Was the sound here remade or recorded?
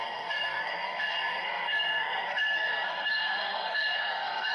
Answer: remade